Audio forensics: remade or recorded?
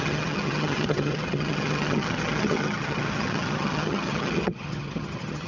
remade